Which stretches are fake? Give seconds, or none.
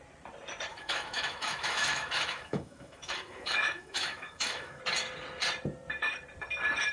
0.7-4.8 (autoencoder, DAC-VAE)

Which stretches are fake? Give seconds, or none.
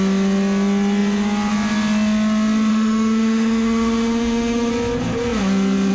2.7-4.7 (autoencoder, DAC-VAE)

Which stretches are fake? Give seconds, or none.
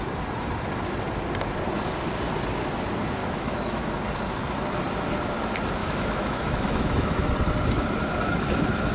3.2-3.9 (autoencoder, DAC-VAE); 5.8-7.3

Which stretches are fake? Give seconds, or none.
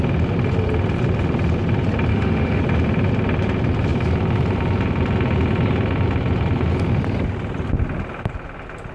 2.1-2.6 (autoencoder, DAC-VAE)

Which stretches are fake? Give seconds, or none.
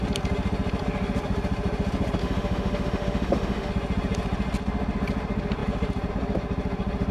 2.2-3.7 (autoencoder, DAC-VAE)